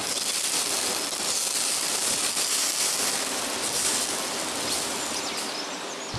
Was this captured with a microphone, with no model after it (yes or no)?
yes